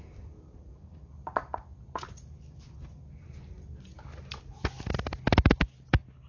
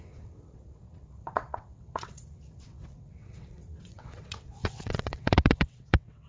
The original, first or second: first